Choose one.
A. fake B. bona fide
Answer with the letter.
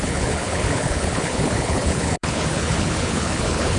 A